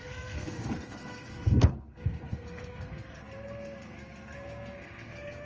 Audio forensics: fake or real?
fake